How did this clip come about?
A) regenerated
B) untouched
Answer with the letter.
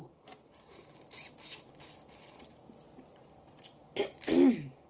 B